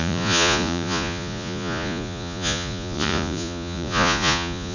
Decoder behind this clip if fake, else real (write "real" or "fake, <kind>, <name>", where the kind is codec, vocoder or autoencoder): fake, vocoder, Vocos